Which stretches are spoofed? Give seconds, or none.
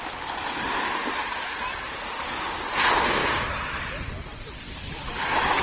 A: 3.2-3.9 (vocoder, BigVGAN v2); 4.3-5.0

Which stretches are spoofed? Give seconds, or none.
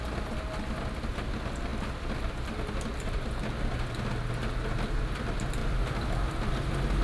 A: 5.6-6.2 (vocoder, BigVGAN v2)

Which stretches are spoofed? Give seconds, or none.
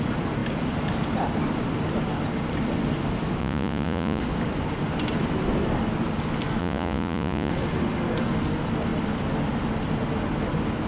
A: 3.4-4.2 (vocoder, Vocos); 6.6-7.5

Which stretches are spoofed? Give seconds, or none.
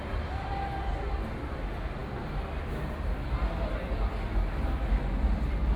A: none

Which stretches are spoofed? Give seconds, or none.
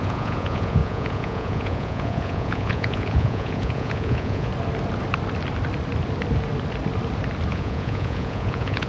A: 0.0-4.5 (vocoder, Vocos); 7.5-8.9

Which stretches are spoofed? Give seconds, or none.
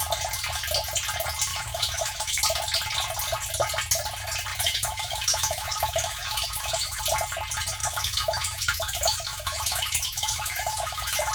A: 1.5-2.4 (autoencoder, DAC-VAE); 4.5-7.0; 7.8-11.3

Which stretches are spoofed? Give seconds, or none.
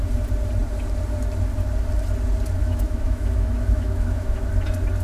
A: 2.6-4.5 (autoencoder, DAC-VAE)